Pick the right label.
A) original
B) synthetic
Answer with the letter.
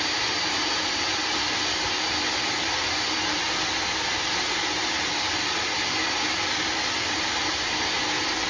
A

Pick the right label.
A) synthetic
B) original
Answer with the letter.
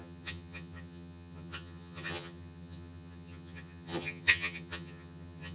A